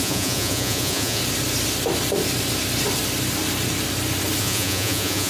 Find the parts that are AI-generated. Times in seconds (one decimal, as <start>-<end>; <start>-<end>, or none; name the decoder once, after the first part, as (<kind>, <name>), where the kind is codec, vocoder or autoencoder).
0.0-1.2 (vocoder, Vocos); 4.4-5.3